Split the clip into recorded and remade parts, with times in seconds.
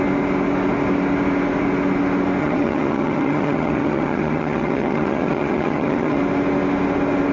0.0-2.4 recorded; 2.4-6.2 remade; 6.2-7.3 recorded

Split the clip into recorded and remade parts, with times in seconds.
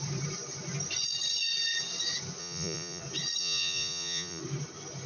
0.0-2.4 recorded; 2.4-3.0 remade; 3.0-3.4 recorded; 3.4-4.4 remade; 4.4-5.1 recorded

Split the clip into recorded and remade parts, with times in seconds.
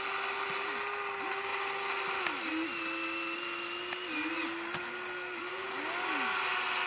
0.0-6.9 recorded